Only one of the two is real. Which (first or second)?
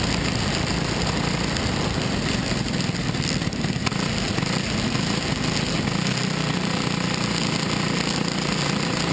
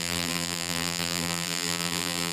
first